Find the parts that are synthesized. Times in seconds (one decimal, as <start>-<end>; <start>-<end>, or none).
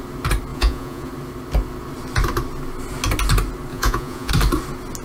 0.5-1.1; 3.7-4.3